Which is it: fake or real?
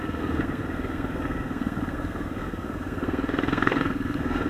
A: fake